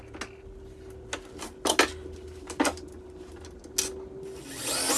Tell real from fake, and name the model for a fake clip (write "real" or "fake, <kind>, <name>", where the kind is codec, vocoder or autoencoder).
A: real